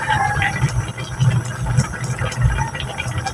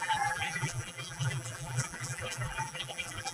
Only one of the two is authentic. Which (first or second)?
first